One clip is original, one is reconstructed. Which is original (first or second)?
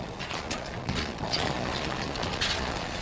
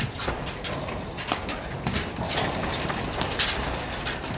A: second